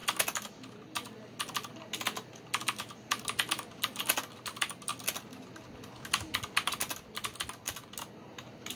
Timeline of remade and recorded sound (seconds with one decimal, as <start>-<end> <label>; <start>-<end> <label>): 0.0-8.8 recorded